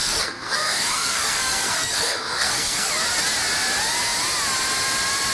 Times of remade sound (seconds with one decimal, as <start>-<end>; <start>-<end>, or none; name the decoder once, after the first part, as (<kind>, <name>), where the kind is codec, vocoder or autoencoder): 0.0-2.9 (codec, SNAC)